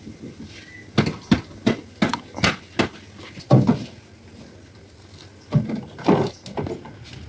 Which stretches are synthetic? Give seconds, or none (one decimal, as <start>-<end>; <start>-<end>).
none